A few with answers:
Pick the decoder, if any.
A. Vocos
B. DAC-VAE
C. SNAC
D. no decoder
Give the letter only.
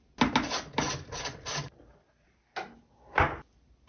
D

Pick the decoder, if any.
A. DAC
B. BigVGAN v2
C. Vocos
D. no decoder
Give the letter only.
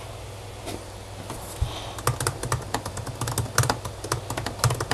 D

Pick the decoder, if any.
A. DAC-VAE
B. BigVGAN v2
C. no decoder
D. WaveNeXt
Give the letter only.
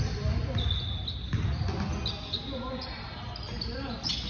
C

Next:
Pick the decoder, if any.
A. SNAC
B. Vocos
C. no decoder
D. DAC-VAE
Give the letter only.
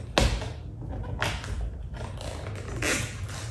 C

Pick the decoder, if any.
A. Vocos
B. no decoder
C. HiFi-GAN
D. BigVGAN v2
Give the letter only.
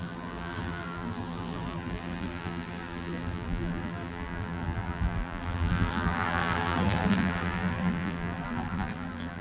D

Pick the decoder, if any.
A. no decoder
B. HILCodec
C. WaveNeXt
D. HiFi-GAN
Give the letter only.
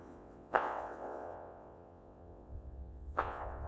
C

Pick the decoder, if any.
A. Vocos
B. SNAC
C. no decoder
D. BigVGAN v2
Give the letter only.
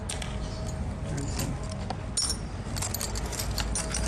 C